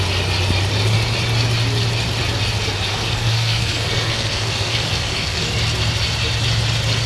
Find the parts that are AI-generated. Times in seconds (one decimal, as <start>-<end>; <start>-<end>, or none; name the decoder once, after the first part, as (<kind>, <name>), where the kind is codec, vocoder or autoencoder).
2.9-5.5 (codec, SNAC)